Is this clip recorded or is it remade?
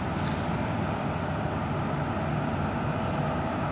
recorded